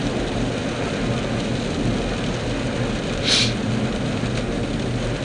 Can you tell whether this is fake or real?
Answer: real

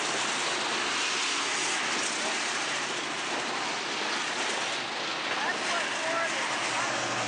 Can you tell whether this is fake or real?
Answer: real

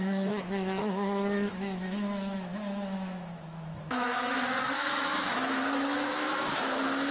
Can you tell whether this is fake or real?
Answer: fake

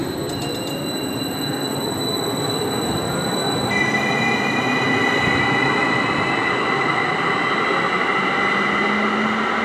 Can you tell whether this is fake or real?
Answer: real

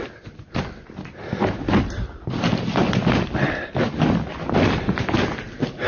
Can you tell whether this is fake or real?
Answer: real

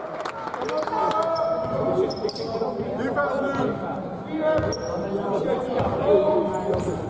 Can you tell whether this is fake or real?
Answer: real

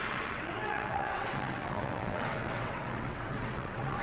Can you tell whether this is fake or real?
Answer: fake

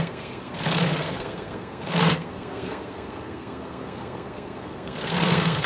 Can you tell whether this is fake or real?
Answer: fake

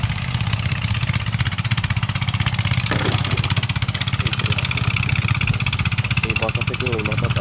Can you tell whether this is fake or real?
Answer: real